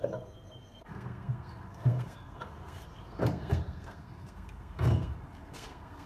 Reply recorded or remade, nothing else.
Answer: remade